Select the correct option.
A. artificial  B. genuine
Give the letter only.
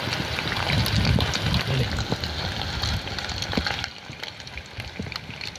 B